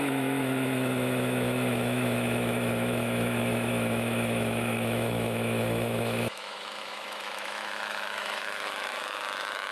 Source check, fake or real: fake